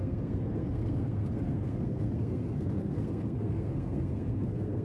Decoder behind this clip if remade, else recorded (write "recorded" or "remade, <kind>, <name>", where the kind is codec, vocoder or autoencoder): remade, codec, SNAC